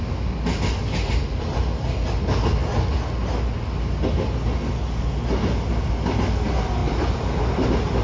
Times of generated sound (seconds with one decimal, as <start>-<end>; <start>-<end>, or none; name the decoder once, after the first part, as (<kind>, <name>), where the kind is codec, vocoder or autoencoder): 6.8-8.0 (vocoder, BigVGAN v2)